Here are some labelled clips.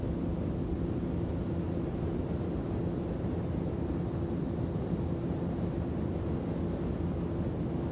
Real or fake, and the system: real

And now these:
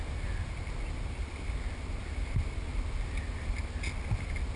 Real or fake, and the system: real